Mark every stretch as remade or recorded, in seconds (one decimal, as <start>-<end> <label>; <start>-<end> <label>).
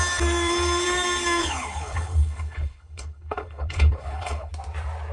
0.0-1.4 recorded; 1.4-4.5 remade; 4.5-5.1 recorded